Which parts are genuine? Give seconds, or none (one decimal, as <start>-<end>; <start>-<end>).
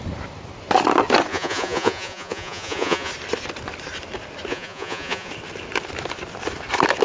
0.0-1.3; 3.1-4.5; 5.3-7.0